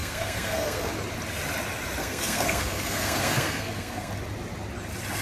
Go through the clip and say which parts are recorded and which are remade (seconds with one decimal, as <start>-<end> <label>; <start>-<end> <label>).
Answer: 0.0-0.9 remade; 0.9-2.0 recorded; 2.0-4.1 remade; 4.1-5.2 recorded